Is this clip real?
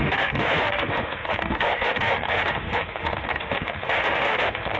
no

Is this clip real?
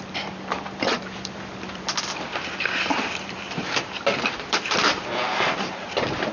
no